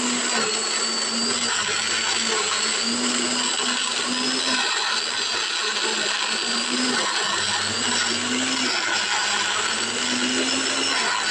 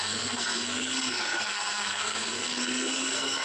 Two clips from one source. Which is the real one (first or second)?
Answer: first